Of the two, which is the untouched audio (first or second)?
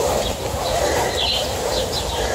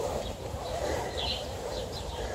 first